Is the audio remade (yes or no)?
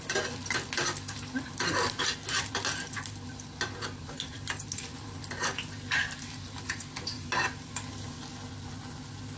no